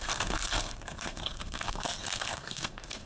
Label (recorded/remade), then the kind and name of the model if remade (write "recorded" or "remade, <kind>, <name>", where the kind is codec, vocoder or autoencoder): remade, codec, SNAC